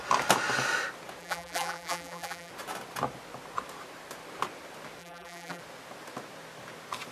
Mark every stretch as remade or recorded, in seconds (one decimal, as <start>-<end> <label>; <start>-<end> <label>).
0.0-1.2 recorded; 1.2-2.5 remade; 2.5-5.0 recorded; 5.0-5.6 remade; 5.6-7.1 recorded